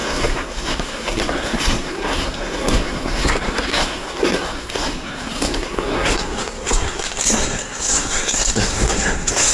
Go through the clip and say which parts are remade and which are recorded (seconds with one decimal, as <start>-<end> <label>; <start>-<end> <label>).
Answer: 0.0-9.5 remade